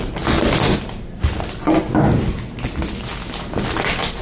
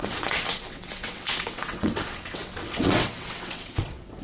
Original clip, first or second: first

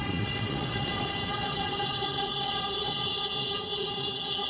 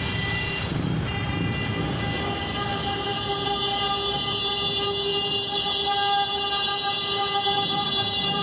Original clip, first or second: second